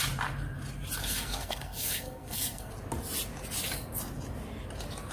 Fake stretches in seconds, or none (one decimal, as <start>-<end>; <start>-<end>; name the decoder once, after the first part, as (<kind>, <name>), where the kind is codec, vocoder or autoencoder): 1.0-2.7 (codec, SNAC)